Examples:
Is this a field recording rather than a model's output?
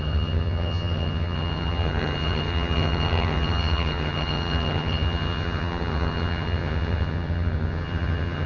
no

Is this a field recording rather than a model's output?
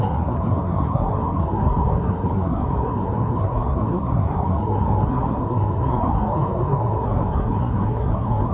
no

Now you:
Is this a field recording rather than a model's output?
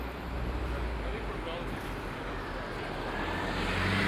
yes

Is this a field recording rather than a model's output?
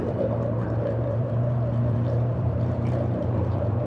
no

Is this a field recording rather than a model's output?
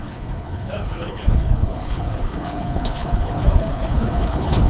no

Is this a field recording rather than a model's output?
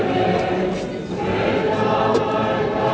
yes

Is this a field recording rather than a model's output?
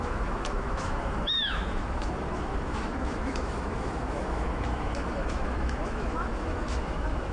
no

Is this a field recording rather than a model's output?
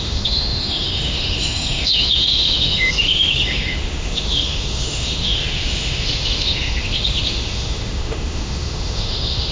no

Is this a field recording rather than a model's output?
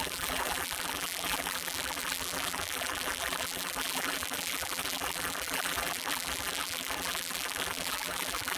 no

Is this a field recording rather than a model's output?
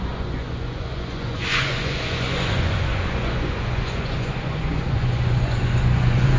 no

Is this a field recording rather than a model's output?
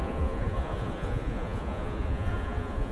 no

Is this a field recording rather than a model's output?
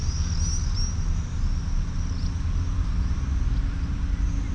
yes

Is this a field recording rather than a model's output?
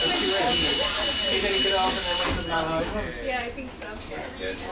yes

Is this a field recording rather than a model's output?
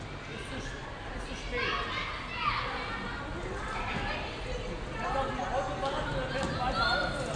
yes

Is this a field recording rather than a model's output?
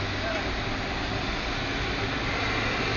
yes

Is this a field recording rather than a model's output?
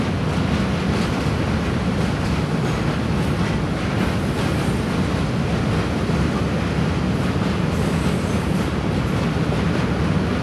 yes